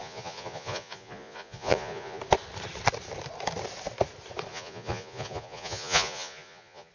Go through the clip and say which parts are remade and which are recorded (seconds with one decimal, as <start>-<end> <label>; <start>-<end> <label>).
0.0-2.2 remade; 2.2-4.5 recorded; 4.5-6.9 remade